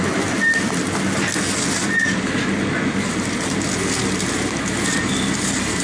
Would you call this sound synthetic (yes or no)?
no